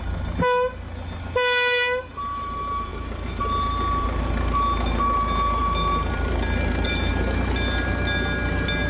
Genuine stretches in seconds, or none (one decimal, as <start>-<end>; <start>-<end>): 0.0-2.9; 3.4-5.6; 7.1-8.9